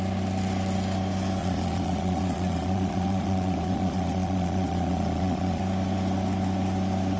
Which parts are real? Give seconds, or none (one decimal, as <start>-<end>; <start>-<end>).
0.0-1.4; 5.6-7.2